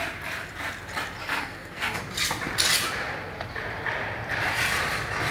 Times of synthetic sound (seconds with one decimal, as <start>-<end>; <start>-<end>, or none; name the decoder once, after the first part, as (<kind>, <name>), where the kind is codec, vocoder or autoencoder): 1.2-2.0 (codec, SNAC)

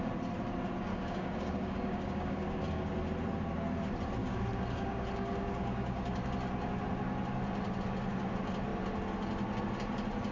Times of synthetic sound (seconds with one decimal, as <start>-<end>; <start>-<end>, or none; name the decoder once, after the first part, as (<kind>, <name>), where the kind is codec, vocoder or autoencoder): 0.9-2.9 (codec, DAC); 4.2-6.3

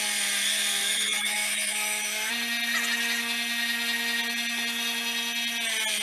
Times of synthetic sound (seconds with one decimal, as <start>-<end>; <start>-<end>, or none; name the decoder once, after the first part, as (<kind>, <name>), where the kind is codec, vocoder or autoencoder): 0.8-2.3 (autoencoder, DAC-VAE)

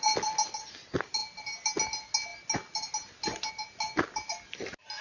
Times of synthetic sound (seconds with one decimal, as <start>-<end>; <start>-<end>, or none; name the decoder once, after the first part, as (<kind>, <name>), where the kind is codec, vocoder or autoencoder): none

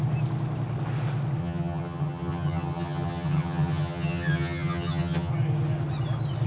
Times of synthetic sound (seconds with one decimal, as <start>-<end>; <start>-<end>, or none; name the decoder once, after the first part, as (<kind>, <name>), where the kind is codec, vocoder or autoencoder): 1.4-5.3 (vocoder, HiFi-GAN)

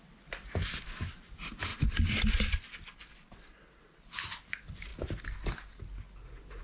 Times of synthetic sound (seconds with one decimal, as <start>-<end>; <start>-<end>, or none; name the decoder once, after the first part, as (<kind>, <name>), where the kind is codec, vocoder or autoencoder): none

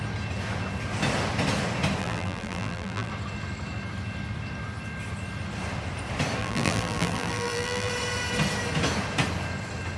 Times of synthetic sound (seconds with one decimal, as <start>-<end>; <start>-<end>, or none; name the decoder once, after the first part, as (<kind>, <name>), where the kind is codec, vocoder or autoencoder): 2.0-3.1 (vocoder, BigVGAN v2); 6.4-7.9

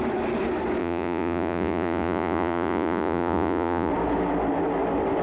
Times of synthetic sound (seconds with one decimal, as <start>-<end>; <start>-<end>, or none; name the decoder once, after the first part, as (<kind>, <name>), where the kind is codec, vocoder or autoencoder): 0.8-3.9 (vocoder, Vocos)